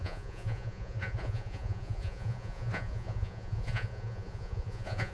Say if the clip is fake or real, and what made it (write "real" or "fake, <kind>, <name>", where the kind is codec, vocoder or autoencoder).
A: fake, vocoder, Vocos